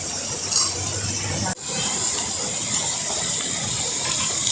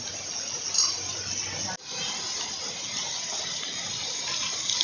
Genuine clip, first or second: second